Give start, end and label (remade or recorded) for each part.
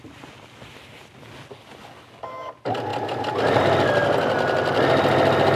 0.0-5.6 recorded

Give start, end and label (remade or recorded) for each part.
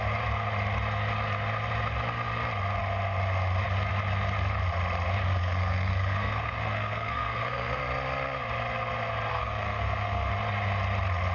0.0-5.4 recorded; 5.4-7.8 remade; 7.8-9.3 recorded; 9.3-10.3 remade; 10.3-11.3 recorded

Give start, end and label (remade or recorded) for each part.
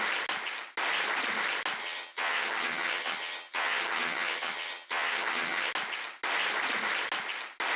0.0-1.8 recorded; 1.8-5.7 remade; 5.7-7.8 recorded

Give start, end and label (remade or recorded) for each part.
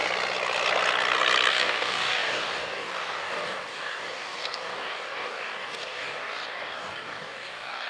0.0-1.5 recorded; 1.5-7.9 remade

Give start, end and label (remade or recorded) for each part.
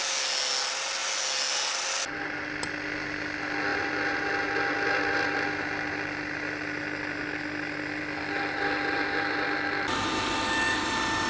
0.0-11.3 recorded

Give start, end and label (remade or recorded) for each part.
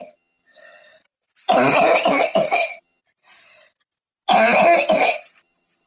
0.0-0.9 remade; 0.9-2.1 recorded; 2.1-3.0 remade; 3.0-5.0 recorded; 5.0-5.9 remade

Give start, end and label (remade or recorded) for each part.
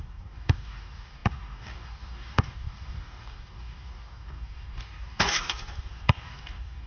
0.0-6.9 remade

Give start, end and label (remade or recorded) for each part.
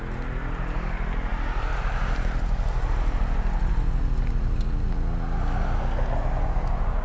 0.0-7.0 recorded